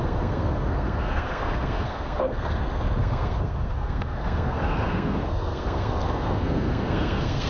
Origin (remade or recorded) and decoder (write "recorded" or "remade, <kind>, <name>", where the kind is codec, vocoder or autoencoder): remade, codec, SNAC